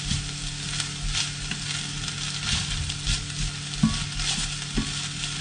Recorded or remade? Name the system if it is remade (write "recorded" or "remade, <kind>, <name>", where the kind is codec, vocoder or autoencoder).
recorded